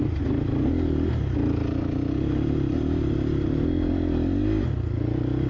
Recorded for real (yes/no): yes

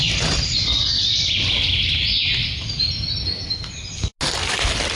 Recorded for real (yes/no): yes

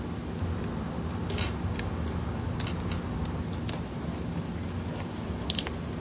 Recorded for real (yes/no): yes